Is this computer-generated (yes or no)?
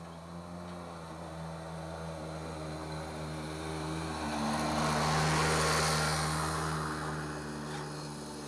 no